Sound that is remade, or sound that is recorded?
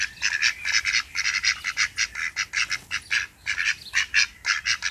recorded